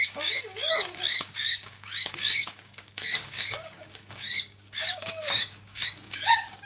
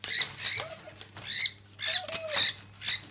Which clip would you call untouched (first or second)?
second